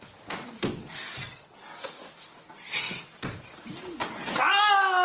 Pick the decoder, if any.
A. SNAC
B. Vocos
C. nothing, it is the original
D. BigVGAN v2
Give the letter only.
C